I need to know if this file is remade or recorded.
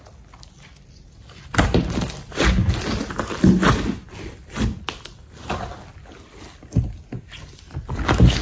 recorded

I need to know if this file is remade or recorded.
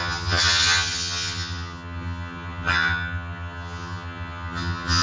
remade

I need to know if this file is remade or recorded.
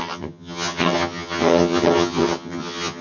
remade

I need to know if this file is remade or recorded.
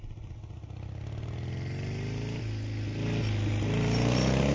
recorded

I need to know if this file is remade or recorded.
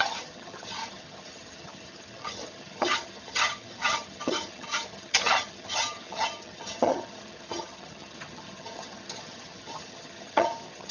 remade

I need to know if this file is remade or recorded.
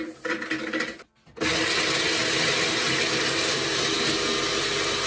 recorded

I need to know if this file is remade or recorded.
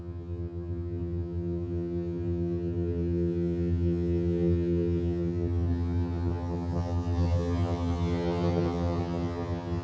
remade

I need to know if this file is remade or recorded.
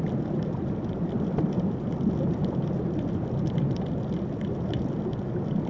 recorded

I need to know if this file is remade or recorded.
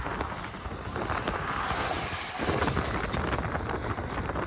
recorded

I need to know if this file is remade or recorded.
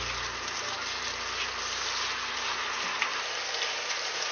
recorded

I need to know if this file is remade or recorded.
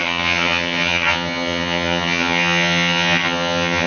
remade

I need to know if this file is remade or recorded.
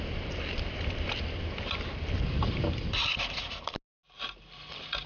recorded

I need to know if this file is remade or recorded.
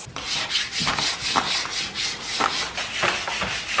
recorded